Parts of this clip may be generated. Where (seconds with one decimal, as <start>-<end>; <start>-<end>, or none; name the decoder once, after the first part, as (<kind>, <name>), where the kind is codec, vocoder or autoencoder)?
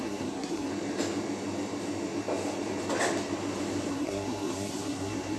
0.0-0.7 (codec, SNAC); 3.9-5.4